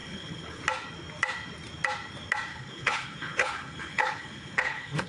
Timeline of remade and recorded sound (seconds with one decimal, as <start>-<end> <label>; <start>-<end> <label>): 0.0-0.6 remade; 0.6-2.5 recorded; 2.5-5.1 remade